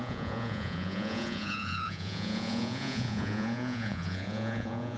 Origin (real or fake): fake